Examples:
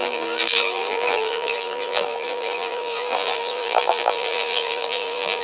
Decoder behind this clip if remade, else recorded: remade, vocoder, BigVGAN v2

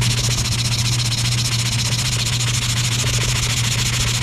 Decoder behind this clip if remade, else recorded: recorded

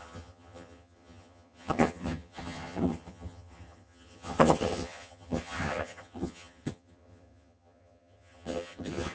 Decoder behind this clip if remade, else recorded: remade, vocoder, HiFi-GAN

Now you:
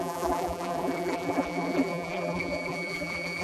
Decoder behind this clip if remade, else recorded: remade, vocoder, BigVGAN v2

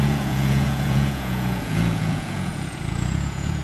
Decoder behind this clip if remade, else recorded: remade, vocoder, Vocos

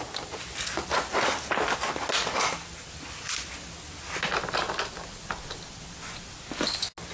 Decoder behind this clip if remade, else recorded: recorded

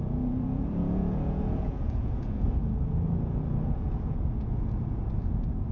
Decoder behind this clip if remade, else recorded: remade, vocoder, Vocos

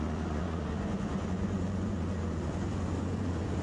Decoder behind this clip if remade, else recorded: remade, vocoder, Vocos